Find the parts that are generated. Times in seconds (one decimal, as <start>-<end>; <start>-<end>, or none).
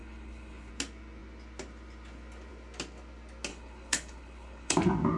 0.0-0.7; 3.5-4.8